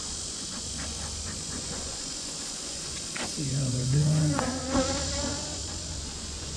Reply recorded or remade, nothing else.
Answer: remade